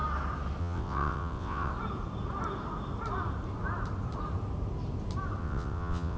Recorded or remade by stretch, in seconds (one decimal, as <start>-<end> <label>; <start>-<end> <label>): 0.0-0.6 recorded; 0.6-1.7 remade; 1.7-5.4 recorded; 5.4-6.2 remade